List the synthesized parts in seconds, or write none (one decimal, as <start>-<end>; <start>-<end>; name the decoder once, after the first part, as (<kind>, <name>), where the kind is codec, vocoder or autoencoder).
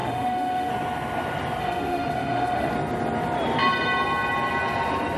0.0-0.7 (autoencoder, DAC-VAE); 1.6-2.7